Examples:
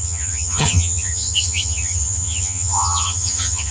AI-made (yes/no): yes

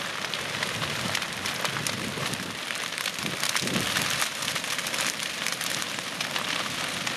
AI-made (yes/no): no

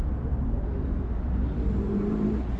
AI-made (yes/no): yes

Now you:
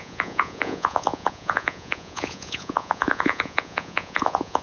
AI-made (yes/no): yes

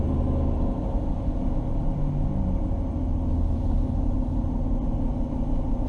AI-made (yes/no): no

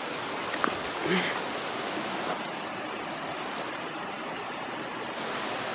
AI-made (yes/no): no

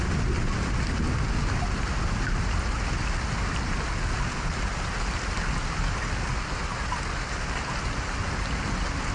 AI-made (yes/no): no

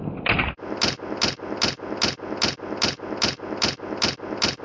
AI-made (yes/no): no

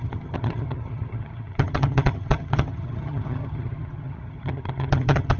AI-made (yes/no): yes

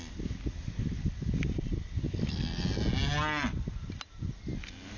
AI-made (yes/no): no